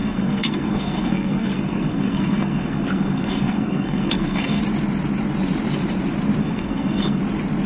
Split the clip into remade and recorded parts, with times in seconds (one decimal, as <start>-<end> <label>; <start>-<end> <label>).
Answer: 0.0-4.6 remade; 4.6-6.4 recorded; 6.4-7.2 remade; 7.2-7.7 recorded